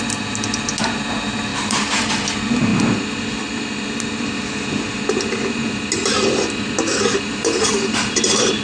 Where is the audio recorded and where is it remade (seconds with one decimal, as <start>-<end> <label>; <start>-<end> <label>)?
0.0-1.5 recorded; 1.5-2.1 remade; 2.1-7.1 recorded; 7.1-8.2 remade; 8.2-8.6 recorded